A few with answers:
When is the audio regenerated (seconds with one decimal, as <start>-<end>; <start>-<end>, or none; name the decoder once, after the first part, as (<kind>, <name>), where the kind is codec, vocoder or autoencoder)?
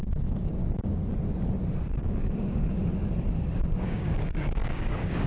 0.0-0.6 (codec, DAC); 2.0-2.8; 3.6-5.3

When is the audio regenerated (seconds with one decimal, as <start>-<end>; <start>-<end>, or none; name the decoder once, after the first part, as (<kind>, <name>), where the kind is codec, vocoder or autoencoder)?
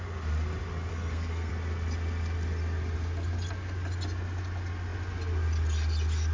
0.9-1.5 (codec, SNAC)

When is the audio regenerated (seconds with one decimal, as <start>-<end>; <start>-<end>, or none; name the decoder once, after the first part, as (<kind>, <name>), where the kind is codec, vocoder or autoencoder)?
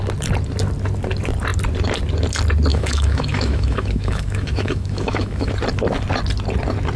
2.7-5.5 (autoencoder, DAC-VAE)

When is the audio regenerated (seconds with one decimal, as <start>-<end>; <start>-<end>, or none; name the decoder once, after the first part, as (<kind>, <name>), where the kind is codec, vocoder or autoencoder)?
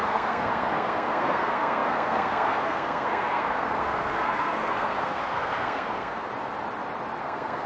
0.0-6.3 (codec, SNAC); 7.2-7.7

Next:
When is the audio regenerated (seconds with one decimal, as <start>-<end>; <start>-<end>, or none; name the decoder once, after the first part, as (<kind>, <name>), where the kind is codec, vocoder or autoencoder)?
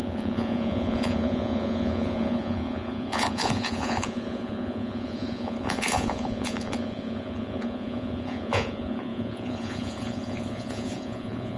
0.0-11.6 (vocoder, Vocos)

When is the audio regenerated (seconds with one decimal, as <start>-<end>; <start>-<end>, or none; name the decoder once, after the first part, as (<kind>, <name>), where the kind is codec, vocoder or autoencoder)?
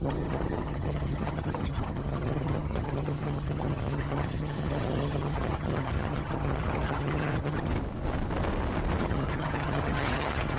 0.0-7.7 (vocoder, HiFi-GAN); 9.0-10.6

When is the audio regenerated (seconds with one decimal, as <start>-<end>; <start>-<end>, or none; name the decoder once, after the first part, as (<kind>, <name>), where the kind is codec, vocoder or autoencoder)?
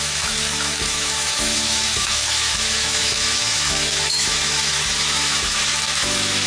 0.0-6.5 (autoencoder, DAC-VAE)